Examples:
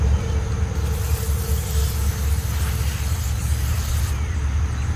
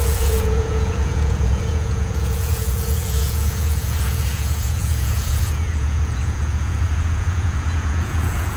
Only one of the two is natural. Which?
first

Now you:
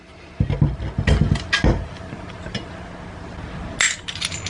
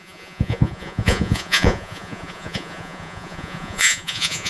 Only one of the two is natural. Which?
first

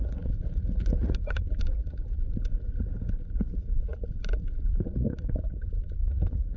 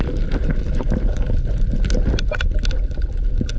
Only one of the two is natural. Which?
second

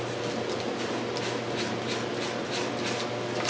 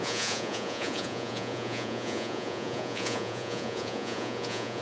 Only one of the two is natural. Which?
first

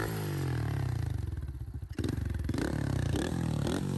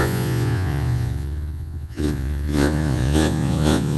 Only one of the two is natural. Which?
first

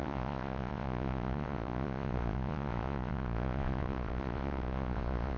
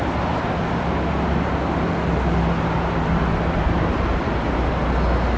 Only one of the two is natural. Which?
second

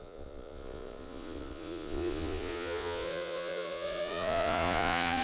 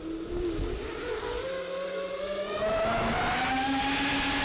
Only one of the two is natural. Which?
second